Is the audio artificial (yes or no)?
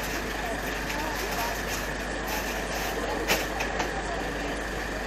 no